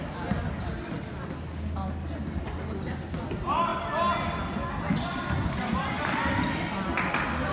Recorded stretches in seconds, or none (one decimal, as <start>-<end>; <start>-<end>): 0.0-7.5